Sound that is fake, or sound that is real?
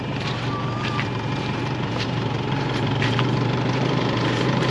fake